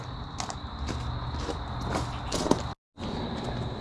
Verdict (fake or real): real